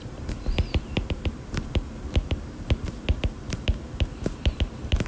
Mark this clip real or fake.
fake